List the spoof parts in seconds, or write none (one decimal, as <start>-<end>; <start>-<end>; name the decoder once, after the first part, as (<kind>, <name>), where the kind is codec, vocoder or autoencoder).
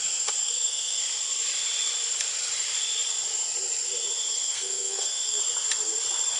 0.4-1.0 (codec, SNAC); 4.3-5.4